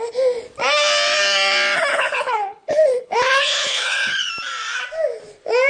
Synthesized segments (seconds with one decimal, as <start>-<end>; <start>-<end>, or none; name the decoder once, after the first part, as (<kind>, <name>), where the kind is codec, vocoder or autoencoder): 1.9-4.3 (codec, HILCodec)